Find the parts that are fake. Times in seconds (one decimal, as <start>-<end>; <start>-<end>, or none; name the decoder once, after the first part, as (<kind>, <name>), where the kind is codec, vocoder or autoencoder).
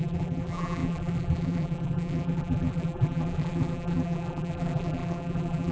0.0-5.7 (vocoder, BigVGAN v2)